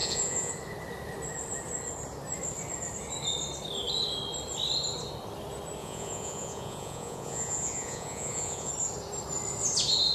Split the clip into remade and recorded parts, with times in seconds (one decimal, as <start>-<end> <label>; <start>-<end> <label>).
0.0-0.5 remade; 0.5-5.8 recorded; 5.8-8.7 remade; 8.7-10.1 recorded